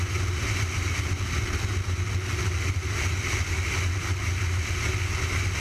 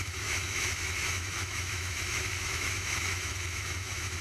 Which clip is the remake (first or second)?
second